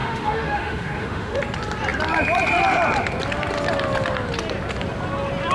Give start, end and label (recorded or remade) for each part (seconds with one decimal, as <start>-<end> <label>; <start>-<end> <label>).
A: 0.0-1.4 remade; 1.4-5.5 recorded